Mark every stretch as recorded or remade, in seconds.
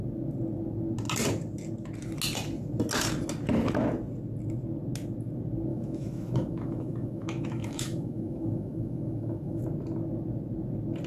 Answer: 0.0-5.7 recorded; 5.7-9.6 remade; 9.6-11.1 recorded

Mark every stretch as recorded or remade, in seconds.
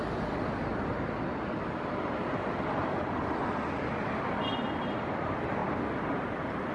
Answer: 0.0-0.7 remade; 0.7-4.4 recorded; 4.4-6.7 remade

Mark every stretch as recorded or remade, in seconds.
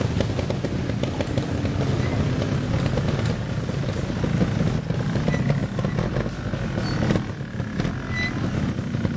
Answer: 0.0-9.2 recorded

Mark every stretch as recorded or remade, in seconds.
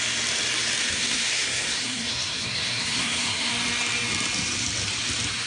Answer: 0.0-0.8 recorded; 0.8-3.5 remade; 3.5-5.5 recorded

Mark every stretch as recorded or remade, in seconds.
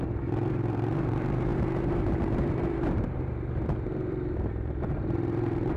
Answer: 0.0-5.8 remade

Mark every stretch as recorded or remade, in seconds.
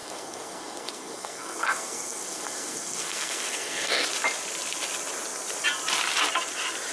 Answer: 0.0-4.1 remade; 4.1-6.9 recorded